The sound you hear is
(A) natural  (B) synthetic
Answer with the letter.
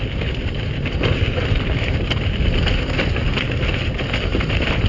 A